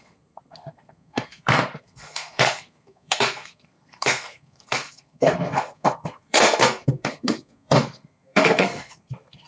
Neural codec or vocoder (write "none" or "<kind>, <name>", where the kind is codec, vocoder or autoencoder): codec, SNAC